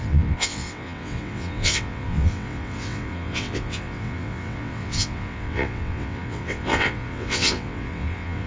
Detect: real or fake fake